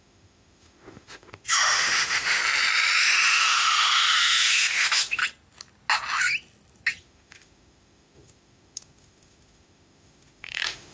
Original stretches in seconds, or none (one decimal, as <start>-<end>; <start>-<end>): 2.4-3.0; 5.2-7.0